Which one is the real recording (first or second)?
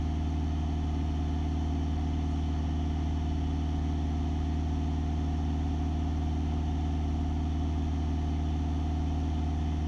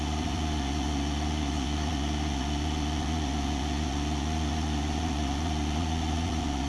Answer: first